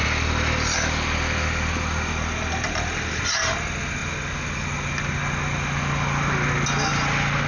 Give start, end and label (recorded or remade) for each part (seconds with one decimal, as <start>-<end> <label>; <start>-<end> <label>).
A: 0.0-7.5 recorded